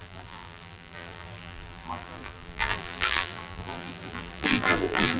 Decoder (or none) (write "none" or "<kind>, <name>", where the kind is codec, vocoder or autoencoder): vocoder, BigVGAN v2